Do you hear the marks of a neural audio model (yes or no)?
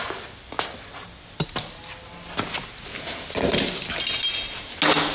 no